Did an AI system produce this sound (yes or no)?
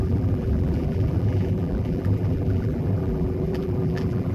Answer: yes